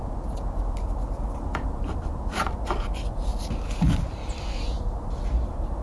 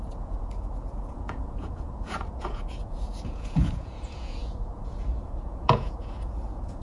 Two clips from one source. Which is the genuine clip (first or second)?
first